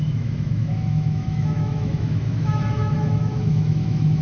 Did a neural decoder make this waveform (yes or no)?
yes